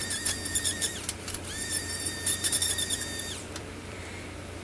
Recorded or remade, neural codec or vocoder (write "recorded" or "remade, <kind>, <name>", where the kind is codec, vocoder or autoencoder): remade, vocoder, BigVGAN v2